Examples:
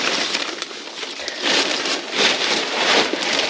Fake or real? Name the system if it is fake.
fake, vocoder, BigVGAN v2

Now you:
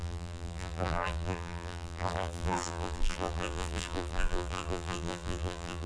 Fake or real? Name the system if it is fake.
fake, vocoder, BigVGAN v2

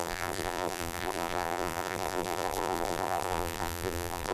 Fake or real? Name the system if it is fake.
fake, vocoder, BigVGAN v2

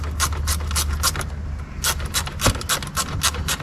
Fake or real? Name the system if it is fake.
real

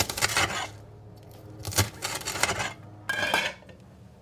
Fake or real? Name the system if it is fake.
real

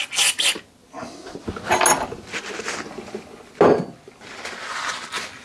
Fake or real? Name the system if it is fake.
real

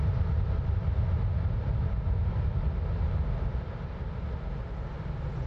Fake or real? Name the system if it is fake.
real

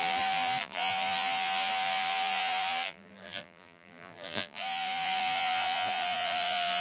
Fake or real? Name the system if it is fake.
fake, vocoder, BigVGAN v2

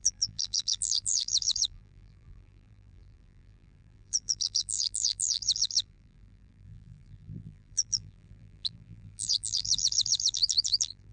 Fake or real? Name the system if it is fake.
fake, vocoder, BigVGAN v2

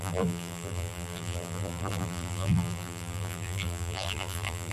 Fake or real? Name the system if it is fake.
fake, vocoder, BigVGAN v2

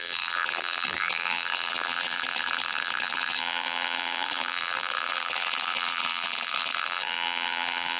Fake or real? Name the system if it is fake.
fake, vocoder, BigVGAN v2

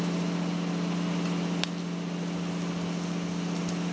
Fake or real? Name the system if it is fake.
real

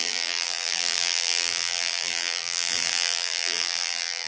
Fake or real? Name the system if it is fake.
fake, vocoder, BigVGAN v2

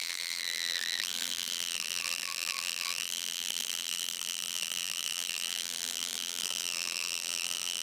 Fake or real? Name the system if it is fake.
fake, vocoder, BigVGAN v2